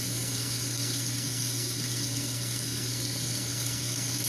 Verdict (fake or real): fake